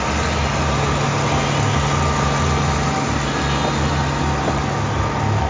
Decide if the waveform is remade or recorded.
recorded